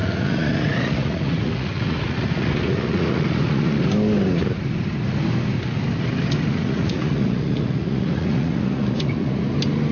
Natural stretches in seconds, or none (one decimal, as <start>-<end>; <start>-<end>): 3.8-6.5; 9.4-9.9